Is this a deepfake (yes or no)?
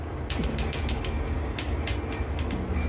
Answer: no